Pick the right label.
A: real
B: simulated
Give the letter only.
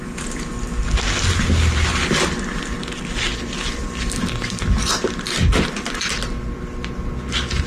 A